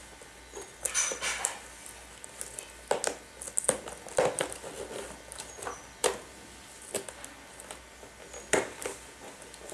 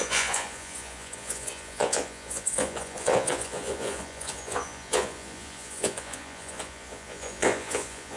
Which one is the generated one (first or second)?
second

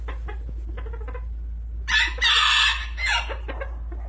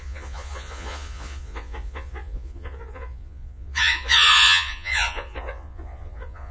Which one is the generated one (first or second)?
second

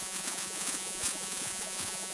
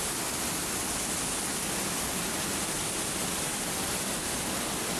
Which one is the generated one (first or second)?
first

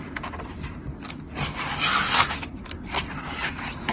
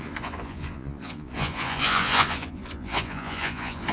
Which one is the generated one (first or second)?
second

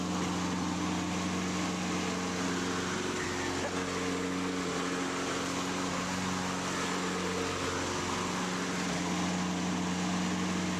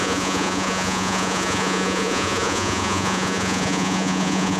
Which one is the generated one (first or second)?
second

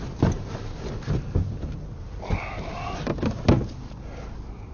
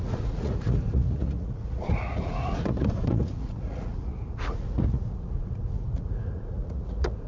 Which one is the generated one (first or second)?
second